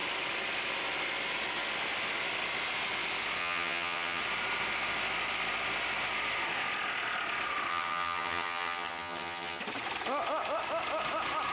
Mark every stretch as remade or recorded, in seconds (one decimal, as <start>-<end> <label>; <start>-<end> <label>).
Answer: 0.0-3.4 recorded; 3.4-4.2 remade; 4.2-7.7 recorded; 7.7-9.6 remade; 9.6-11.5 recorded